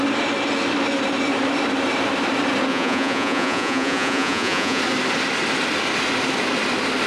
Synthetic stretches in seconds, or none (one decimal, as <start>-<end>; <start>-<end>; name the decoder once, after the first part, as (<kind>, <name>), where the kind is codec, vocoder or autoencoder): 2.7-4.8 (vocoder, Vocos)